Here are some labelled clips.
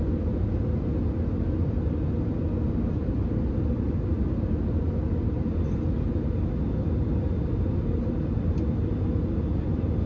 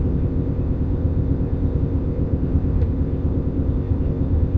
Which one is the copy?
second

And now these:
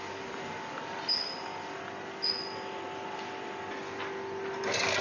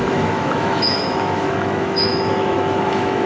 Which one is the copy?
second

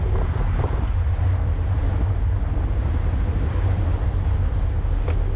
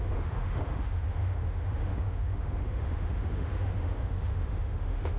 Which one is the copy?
second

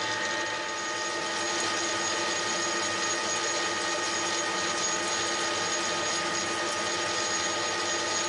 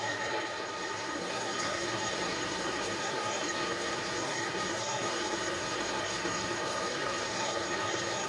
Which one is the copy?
second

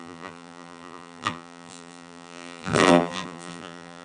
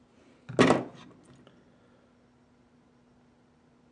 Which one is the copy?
first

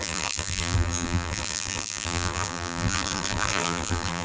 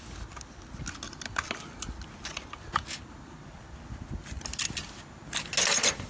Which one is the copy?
first